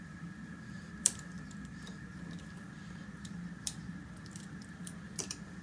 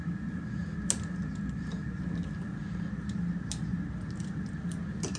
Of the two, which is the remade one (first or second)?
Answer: first